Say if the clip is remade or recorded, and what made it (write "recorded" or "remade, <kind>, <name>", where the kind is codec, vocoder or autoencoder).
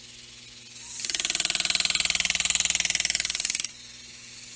recorded